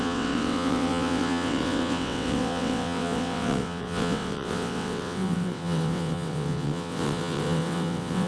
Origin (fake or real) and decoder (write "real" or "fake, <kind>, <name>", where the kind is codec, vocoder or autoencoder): fake, vocoder, WaveNeXt